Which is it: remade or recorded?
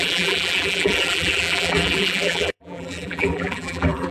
remade